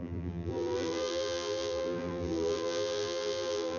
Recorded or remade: remade